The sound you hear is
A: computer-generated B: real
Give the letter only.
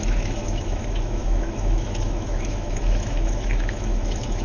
A